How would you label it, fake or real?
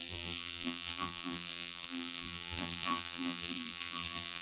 fake